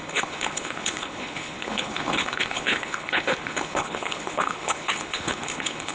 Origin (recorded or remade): remade